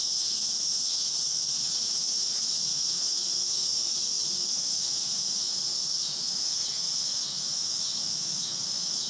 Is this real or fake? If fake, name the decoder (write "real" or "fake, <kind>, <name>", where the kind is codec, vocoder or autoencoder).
fake, autoencoder, DAC-VAE